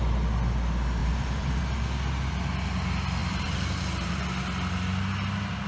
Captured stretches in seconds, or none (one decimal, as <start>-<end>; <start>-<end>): 0.0-1.0; 1.6-3.2; 4.2-5.7